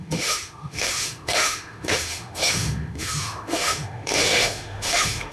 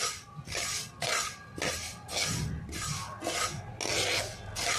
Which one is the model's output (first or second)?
first